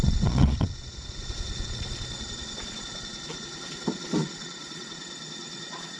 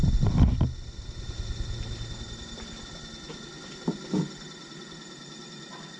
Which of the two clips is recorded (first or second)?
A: second